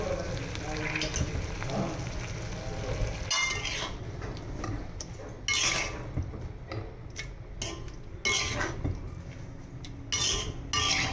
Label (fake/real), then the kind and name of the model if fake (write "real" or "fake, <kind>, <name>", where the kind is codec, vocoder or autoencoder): real